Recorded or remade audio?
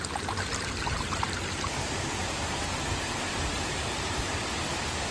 recorded